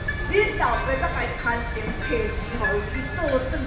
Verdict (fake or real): real